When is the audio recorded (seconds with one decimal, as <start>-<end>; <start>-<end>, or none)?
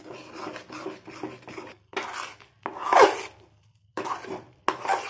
0.0-3.9; 4.6-5.1